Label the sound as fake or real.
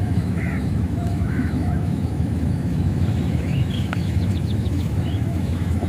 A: fake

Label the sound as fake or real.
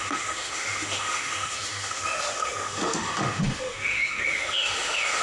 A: fake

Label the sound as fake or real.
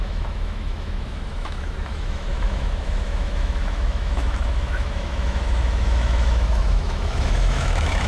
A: fake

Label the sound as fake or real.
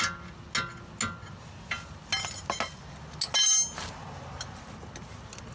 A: real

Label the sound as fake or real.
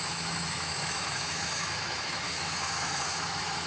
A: fake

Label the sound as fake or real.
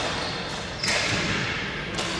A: real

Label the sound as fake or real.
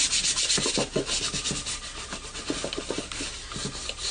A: real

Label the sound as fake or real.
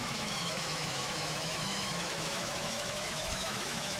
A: fake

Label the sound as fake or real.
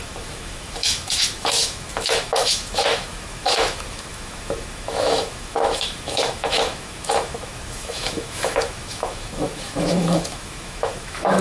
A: fake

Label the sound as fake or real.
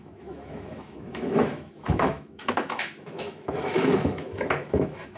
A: fake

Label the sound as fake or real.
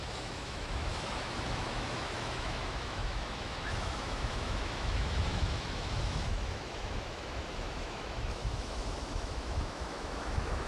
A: fake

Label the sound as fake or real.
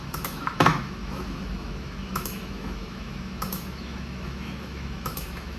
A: fake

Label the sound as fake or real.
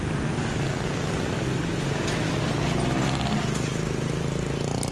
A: real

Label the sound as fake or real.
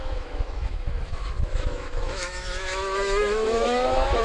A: fake